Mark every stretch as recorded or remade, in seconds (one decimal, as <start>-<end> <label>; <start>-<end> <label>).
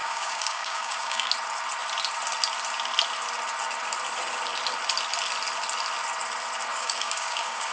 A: 0.0-1.3 remade; 1.3-6.7 recorded; 6.7-7.7 remade